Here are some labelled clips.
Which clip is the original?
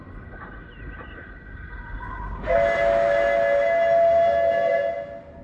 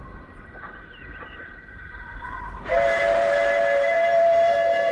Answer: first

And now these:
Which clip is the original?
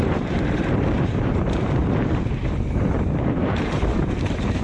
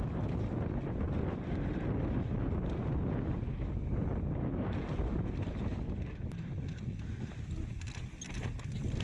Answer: second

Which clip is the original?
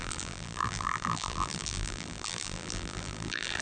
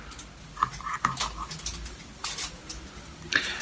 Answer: second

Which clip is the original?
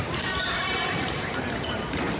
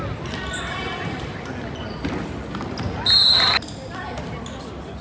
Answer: second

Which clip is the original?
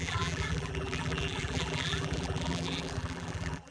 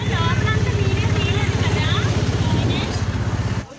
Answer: second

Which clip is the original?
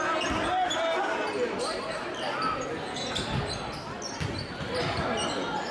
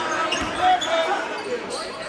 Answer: first